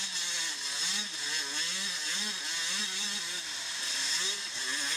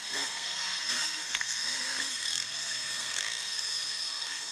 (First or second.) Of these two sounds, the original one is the first